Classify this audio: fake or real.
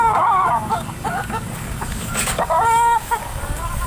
fake